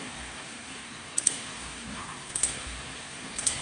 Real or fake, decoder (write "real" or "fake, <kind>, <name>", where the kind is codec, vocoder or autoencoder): fake, codec, SNAC